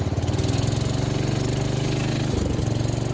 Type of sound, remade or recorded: recorded